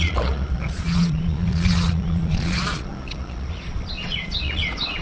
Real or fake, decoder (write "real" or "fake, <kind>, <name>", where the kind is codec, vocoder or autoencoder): fake, vocoder, Vocos